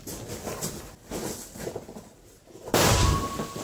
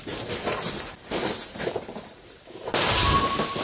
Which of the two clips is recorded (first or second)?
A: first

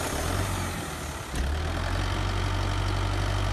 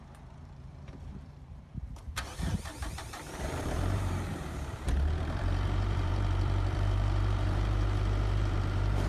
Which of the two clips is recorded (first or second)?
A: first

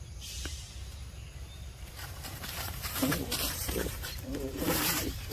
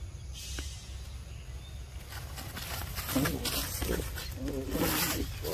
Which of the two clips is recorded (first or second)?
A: second